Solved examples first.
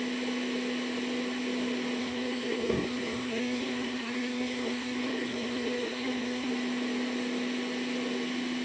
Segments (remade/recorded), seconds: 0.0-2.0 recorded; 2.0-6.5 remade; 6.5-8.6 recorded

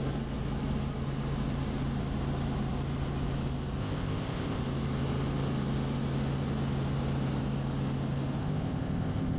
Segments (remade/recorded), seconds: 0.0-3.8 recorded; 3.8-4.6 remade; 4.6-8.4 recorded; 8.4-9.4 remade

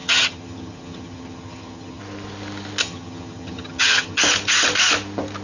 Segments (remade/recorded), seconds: 0.0-2.0 remade; 2.0-2.8 recorded; 2.8-4.2 remade; 4.2-5.4 recorded

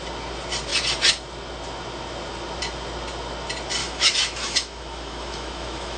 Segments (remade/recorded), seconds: 0.0-3.8 recorded; 3.8-6.0 remade

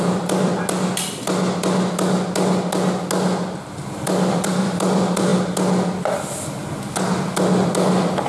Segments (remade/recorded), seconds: 0.0-0.5 remade; 0.5-4.3 recorded; 4.3-5.3 remade; 5.3-8.3 recorded